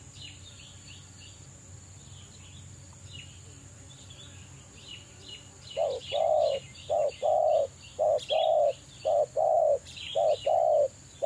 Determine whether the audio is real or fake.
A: real